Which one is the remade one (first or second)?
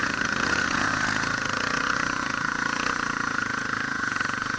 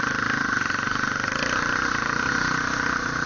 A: first